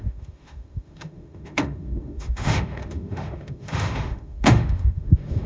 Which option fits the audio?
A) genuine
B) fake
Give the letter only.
B